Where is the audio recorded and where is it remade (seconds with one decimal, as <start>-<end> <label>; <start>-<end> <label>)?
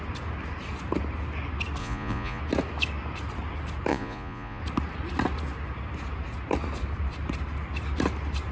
0.0-1.8 recorded; 1.8-2.4 remade; 2.4-3.9 recorded; 3.9-4.6 remade; 4.6-8.5 recorded